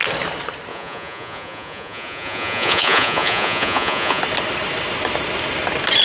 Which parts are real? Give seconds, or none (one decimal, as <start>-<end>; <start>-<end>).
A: 0.0-0.7; 4.2-6.0